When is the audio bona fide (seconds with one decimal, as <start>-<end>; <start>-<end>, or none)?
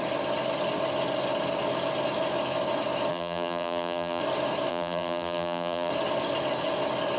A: 0.0-3.1; 4.2-4.7; 5.9-7.2